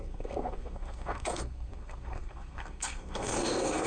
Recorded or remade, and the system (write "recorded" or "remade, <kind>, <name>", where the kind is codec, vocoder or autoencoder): remade, codec, SNAC